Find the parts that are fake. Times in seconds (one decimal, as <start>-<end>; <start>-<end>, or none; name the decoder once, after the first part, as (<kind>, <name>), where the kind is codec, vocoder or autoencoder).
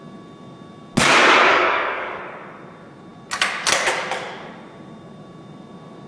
1.5-2.2 (codec, DAC)